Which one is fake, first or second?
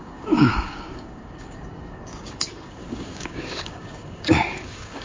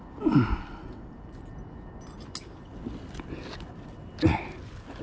first